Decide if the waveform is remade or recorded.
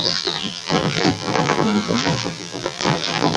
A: remade